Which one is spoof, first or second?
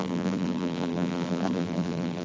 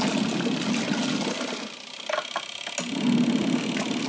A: first